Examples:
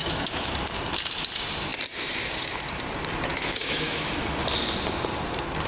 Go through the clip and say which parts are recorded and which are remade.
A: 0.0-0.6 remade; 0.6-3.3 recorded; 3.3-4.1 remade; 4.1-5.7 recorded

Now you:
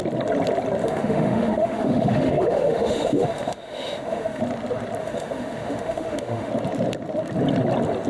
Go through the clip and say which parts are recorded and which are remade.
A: 0.0-0.8 recorded; 0.8-4.4 remade; 4.4-5.0 recorded; 5.0-6.5 remade; 6.5-8.1 recorded

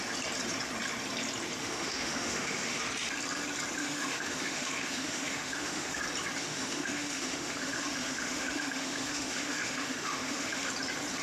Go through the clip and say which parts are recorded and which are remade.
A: 0.0-1.6 recorded; 1.6-2.8 remade; 2.8-3.8 recorded; 3.8-6.0 remade; 6.0-6.4 recorded; 6.4-10.7 remade; 10.7-11.2 recorded

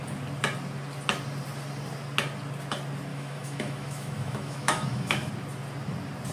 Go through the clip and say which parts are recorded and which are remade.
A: 0.0-3.1 recorded; 3.1-5.3 remade; 5.3-6.3 recorded

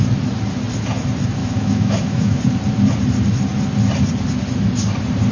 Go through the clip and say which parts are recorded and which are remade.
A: 0.0-1.4 recorded; 1.4-2.4 remade; 2.4-5.3 recorded

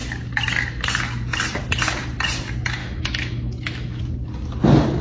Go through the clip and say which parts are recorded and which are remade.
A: 0.0-2.8 recorded; 2.8-4.0 remade; 4.0-5.0 recorded

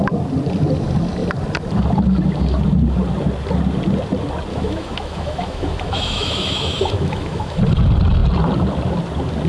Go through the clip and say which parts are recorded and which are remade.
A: 0.0-4.5 recorded; 4.5-7.6 remade; 7.6-9.5 recorded

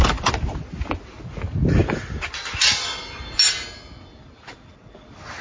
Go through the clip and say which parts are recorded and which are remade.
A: 0.0-5.4 recorded